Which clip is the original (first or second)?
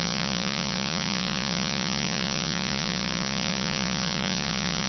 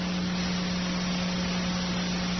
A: second